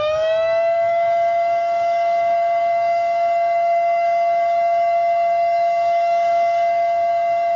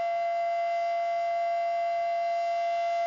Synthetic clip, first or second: first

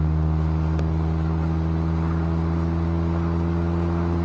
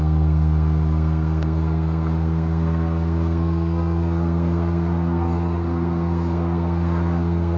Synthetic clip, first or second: second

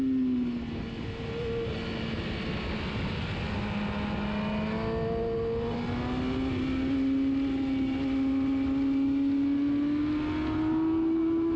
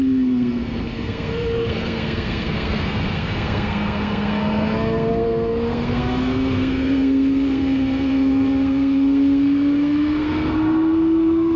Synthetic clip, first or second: second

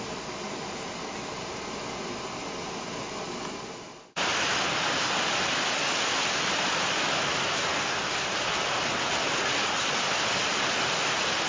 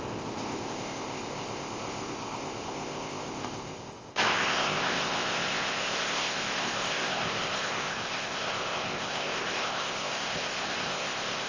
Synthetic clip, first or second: second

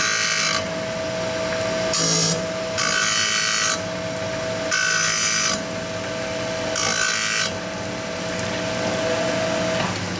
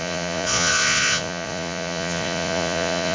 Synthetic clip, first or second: second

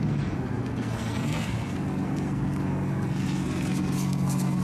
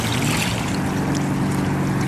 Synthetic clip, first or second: first